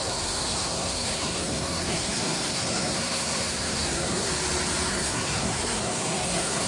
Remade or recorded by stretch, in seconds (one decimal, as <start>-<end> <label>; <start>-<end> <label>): 0.0-4.3 remade; 4.3-4.9 recorded; 4.9-6.7 remade